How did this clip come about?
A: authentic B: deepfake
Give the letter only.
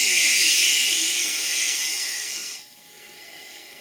B